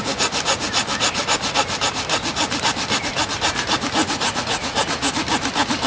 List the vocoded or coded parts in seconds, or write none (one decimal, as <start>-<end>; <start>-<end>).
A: 4.0-5.1